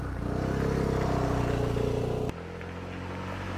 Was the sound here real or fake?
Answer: real